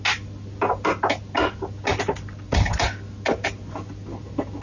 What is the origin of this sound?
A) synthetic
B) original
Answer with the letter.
B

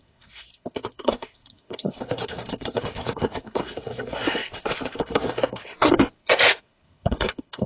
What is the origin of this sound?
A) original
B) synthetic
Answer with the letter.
B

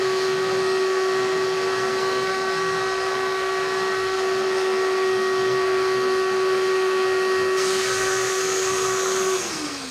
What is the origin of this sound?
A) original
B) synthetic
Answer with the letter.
B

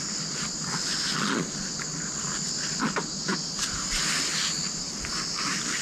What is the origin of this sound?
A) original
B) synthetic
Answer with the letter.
A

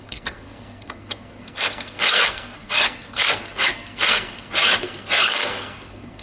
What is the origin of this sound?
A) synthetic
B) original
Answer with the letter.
A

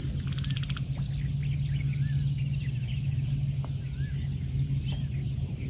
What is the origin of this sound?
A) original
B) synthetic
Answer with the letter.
A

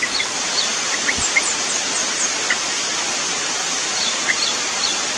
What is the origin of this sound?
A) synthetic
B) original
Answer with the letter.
B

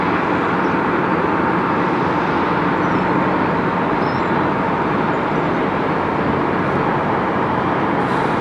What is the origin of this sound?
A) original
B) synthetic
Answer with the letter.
A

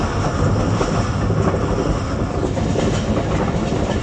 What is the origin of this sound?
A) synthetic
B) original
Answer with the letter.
B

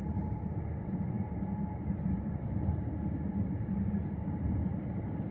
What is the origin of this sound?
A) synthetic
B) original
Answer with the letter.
B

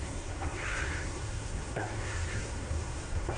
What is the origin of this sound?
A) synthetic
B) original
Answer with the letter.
A